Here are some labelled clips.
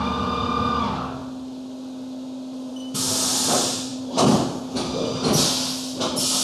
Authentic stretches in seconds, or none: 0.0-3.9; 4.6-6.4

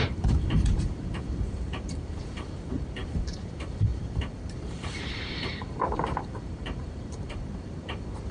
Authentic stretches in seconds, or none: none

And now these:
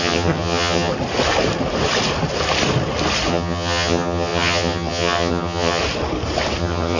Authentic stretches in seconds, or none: 0.9-3.3; 5.8-6.6

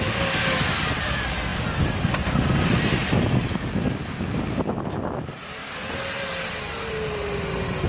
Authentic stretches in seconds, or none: 0.0-7.9